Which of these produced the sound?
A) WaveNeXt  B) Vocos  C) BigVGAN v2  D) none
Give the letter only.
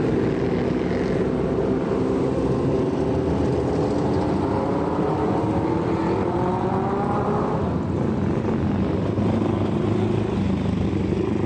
D